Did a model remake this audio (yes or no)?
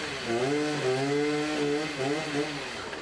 no